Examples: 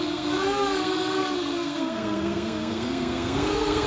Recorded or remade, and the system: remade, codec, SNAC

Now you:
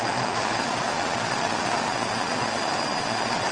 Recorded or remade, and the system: remade, vocoder, Vocos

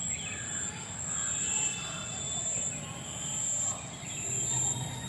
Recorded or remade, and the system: remade, vocoder, BigVGAN v2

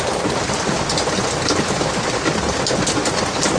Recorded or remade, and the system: recorded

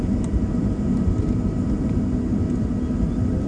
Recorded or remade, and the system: recorded